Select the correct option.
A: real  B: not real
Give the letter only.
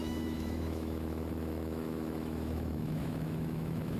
B